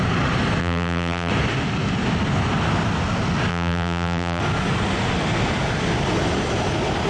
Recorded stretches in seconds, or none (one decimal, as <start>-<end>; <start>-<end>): 0.0-0.6; 1.3-3.5; 4.4-7.1